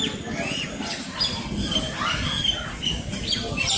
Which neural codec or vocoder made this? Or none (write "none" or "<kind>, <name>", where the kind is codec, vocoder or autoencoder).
none